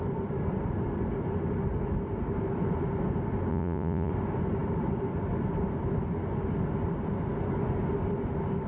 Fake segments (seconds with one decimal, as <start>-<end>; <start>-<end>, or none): 3.5-4.1